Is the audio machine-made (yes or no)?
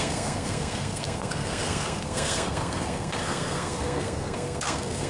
yes